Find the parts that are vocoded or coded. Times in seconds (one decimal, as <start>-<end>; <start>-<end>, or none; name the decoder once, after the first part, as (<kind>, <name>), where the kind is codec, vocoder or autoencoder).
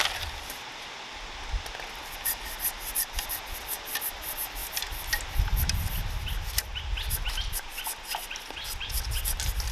none